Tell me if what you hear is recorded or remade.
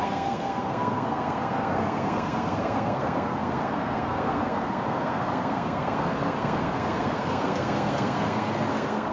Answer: remade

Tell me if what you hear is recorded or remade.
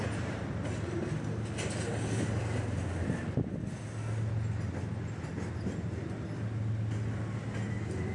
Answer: recorded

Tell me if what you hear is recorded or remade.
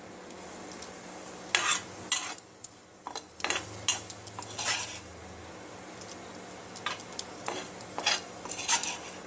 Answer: recorded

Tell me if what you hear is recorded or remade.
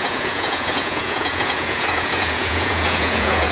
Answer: remade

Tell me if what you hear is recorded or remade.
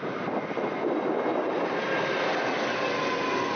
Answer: recorded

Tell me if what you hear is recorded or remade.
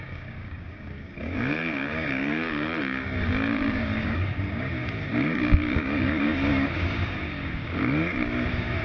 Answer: remade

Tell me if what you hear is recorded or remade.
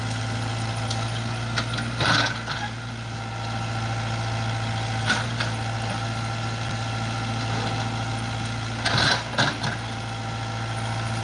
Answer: recorded